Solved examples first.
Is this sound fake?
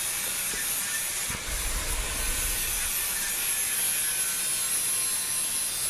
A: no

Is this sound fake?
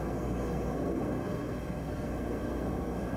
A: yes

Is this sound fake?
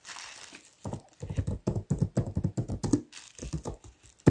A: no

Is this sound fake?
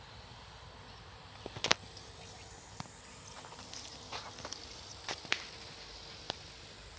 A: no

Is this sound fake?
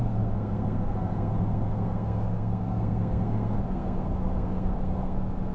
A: yes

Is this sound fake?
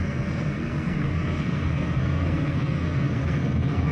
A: yes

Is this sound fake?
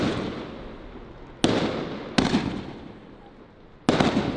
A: no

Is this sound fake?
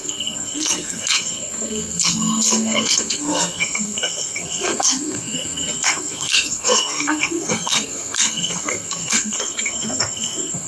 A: yes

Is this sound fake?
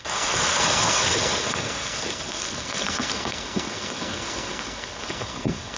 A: yes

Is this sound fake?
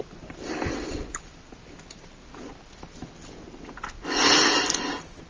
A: no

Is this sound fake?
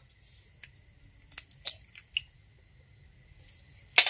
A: no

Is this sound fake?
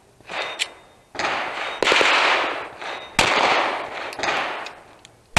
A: no